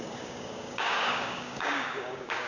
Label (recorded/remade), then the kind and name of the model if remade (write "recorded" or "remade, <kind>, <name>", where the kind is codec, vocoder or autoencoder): remade, codec, DAC